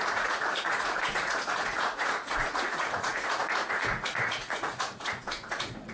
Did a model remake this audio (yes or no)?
yes